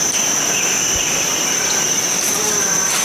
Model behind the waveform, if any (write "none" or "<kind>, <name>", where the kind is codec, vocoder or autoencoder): none